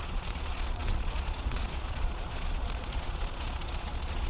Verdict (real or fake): fake